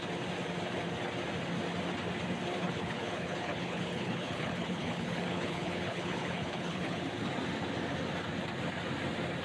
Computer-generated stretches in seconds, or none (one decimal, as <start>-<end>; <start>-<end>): 2.6-7.0